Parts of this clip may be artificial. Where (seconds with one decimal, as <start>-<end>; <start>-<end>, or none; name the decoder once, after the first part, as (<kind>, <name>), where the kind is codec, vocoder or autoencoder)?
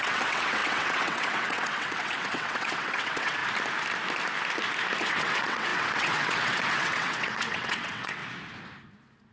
0.0-3.4 (vocoder, WaveNeXt); 5.0-8.2